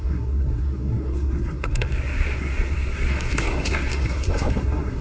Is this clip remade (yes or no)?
yes